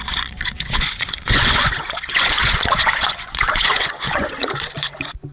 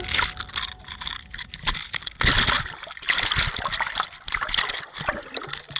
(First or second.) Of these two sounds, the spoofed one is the first